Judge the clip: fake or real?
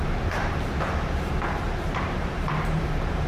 fake